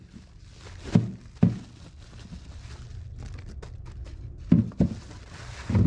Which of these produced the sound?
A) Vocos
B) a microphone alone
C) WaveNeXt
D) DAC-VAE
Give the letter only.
B